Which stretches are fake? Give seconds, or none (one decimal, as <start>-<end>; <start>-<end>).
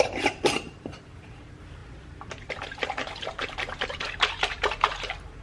0.0-1.8; 2.6-5.4